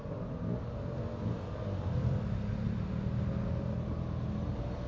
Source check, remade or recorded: recorded